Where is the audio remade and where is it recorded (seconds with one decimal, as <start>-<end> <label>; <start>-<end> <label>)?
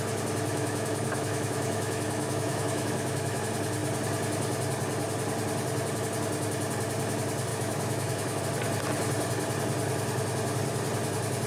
0.0-0.5 recorded; 0.5-3.4 remade; 3.4-7.5 recorded; 7.5-8.4 remade; 8.4-11.5 recorded